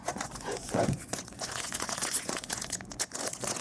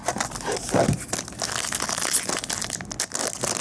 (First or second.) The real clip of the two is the second